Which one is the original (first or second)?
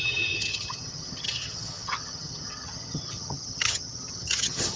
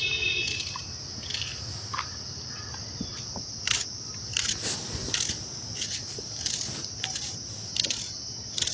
second